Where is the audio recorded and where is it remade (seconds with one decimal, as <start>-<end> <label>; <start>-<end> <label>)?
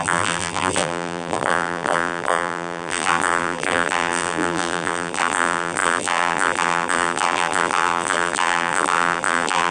0.0-9.7 remade